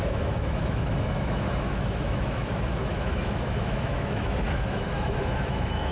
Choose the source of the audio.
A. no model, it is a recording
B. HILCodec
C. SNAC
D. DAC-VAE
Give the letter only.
D